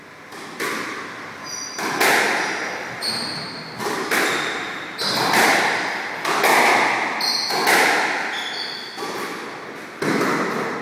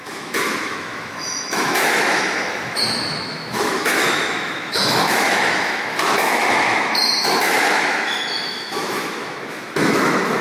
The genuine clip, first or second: first